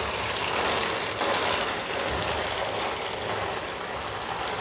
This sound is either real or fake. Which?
real